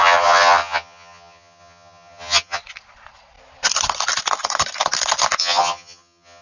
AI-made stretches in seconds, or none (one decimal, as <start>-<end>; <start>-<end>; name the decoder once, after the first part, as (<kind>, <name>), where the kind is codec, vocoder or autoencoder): 0.0-2.6 (vocoder, HiFi-GAN); 5.4-6.4